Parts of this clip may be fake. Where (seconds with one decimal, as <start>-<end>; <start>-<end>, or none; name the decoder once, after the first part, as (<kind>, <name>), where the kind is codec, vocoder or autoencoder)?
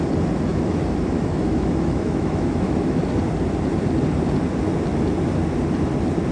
0.5-3.0 (autoencoder, DAC-VAE)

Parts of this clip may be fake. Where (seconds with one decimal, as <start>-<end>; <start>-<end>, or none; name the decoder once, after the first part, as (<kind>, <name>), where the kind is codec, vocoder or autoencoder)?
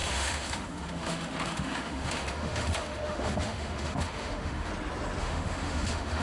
0.0-4.7 (autoencoder, DAC-VAE); 5.2-6.2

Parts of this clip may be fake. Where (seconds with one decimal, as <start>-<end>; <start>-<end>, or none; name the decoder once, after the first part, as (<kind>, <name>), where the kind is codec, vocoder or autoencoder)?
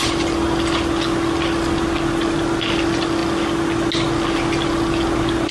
none